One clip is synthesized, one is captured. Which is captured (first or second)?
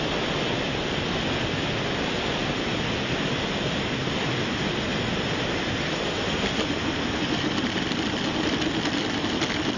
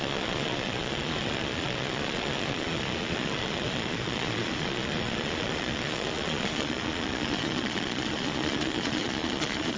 first